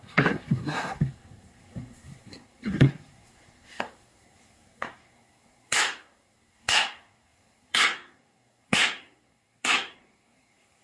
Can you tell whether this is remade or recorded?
remade